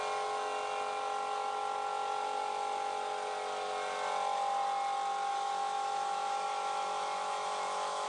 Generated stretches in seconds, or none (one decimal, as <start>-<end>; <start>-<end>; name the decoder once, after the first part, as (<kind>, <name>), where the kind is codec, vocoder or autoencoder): 5.3-8.1 (autoencoder, DAC-VAE)